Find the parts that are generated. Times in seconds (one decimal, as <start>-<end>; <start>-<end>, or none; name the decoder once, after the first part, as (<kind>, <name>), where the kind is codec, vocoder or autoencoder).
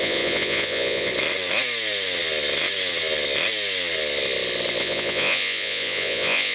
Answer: 0.0-1.1 (vocoder, Vocos); 4.8-6.5